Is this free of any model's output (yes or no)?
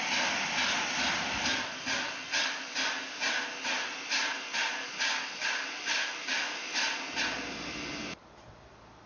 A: yes